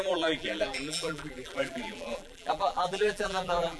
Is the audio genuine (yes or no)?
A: no